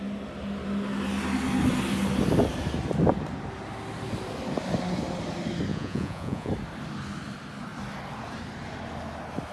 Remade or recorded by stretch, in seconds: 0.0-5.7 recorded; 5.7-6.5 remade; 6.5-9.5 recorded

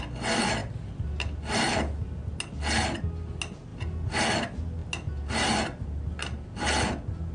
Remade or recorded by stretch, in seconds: 0.0-7.3 recorded

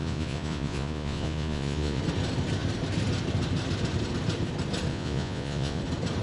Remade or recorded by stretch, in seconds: 0.0-2.0 remade; 2.0-4.9 recorded; 4.9-5.8 remade; 5.8-6.2 recorded

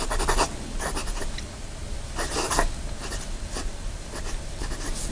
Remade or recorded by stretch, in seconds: 0.0-5.1 recorded

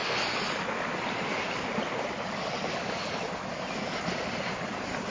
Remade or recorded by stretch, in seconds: 0.0-5.1 recorded

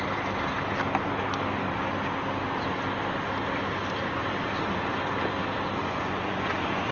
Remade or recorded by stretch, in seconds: 0.0-5.8 recorded; 5.8-6.9 remade